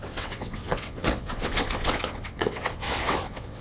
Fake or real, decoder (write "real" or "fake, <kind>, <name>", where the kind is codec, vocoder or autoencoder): fake, vocoder, WaveNeXt